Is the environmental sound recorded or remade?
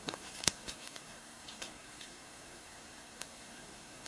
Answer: remade